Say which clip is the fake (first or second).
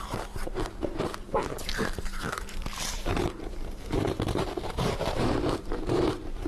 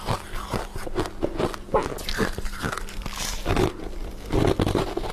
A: first